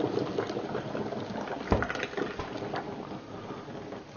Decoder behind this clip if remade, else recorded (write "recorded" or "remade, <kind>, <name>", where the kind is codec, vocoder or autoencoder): recorded